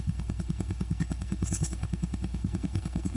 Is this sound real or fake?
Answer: fake